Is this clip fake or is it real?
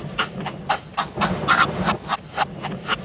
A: real